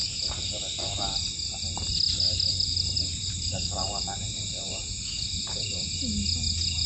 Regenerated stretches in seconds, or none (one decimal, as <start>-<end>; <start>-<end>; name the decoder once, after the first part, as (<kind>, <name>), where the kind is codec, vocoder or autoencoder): 0.0-1.0 (vocoder, BigVGAN v2); 2.5-4.8